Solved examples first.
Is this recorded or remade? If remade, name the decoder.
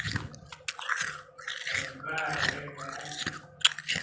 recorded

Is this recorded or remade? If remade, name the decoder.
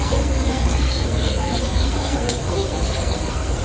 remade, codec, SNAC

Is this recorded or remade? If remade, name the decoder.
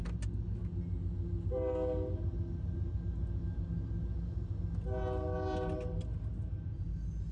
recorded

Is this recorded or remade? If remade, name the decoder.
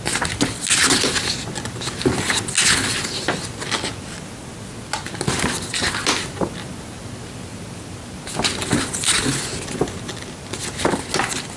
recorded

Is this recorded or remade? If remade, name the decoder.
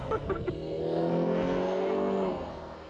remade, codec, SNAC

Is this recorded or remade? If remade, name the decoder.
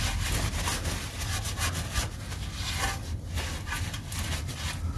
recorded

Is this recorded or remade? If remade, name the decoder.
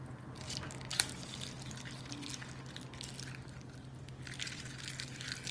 recorded